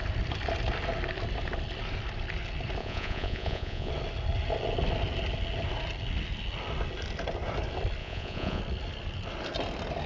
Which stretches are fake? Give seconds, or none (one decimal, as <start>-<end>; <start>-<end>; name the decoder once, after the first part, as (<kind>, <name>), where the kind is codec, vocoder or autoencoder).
2.8-3.9 (vocoder, Vocos); 8.0-8.6